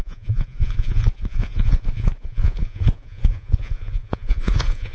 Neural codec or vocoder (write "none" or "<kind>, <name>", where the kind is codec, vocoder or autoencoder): vocoder, Vocos